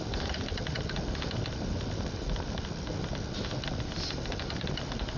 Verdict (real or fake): real